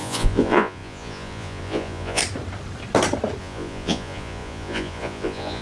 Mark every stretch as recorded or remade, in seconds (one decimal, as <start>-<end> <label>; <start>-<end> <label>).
0.0-2.2 remade; 2.2-3.4 recorded; 3.4-5.6 remade

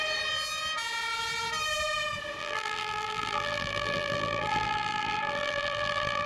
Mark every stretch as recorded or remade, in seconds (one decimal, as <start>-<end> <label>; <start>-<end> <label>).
0.0-2.4 recorded; 2.4-6.3 remade